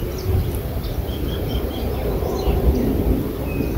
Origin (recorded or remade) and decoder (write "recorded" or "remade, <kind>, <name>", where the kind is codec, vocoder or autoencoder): recorded